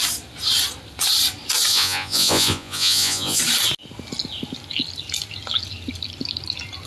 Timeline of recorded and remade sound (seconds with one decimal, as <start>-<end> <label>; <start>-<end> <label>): 0.0-1.7 recorded; 1.7-3.4 remade; 3.4-6.9 recorded